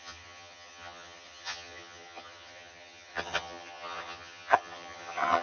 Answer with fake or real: fake